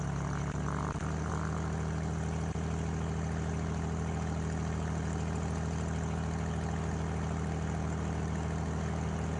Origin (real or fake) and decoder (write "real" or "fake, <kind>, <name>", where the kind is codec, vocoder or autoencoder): real